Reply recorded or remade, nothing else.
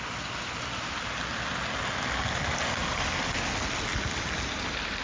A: recorded